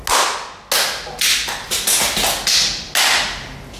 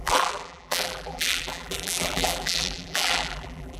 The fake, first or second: second